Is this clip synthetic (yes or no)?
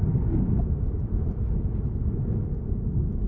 no